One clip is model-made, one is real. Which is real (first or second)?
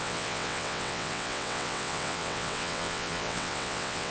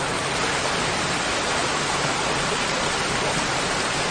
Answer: second